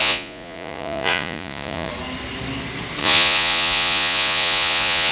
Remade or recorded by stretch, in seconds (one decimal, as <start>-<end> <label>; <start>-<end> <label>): 0.0-1.9 remade; 1.9-3.0 recorded; 3.0-5.1 remade